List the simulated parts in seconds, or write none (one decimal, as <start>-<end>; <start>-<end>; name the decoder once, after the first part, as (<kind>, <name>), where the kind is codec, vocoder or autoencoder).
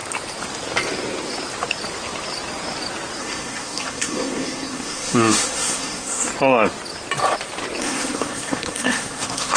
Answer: 3.2-6.3 (codec, SNAC); 7.8-9.6